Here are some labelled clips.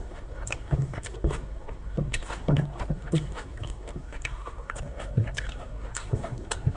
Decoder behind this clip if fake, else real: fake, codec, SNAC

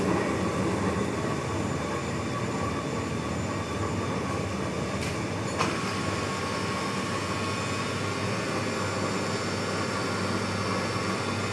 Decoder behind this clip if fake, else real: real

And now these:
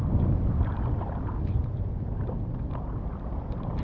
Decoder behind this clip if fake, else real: real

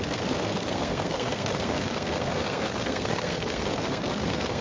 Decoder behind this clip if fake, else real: fake, codec, SNAC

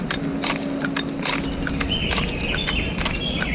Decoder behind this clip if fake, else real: real